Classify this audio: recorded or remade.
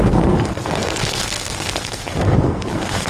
remade